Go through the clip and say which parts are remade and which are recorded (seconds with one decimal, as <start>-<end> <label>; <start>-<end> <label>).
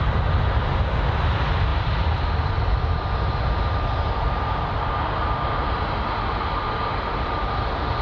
0.0-1.7 recorded; 1.7-2.3 remade; 2.3-5.2 recorded; 5.2-8.0 remade